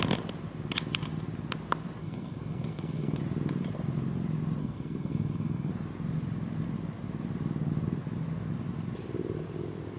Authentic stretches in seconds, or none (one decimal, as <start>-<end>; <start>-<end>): 0.0-2.0; 3.2-4.6; 5.7-10.0